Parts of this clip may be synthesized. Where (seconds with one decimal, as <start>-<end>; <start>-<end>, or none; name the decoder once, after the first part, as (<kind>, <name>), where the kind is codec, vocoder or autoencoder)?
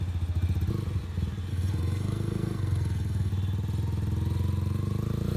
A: 1.5-3.3 (codec, SNAC)